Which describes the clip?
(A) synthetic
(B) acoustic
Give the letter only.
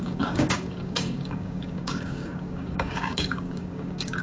A